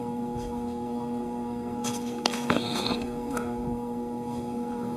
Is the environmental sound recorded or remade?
remade